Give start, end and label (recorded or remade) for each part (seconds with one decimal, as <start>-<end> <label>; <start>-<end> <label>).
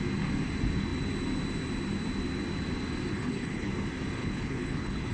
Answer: 0.0-3.1 recorded; 3.1-3.7 remade; 3.7-4.2 recorded; 4.2-5.1 remade